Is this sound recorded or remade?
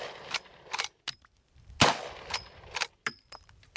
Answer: recorded